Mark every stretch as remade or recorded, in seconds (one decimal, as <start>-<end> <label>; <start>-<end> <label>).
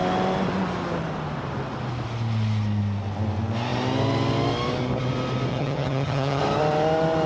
0.0-5.5 recorded; 5.5-6.4 remade; 6.4-7.3 recorded